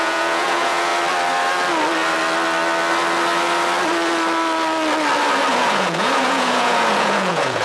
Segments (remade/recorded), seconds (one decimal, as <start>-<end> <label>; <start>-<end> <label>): 0.0-0.9 remade; 0.9-5.5 recorded; 5.5-7.6 remade